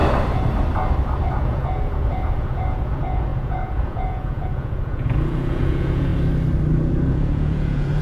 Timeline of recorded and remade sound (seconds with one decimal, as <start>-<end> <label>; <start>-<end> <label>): 0.0-1.3 recorded; 1.3-6.1 remade; 6.1-6.7 recorded; 6.7-8.0 remade